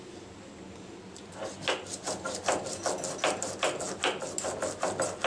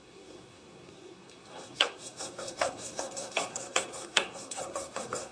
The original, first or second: first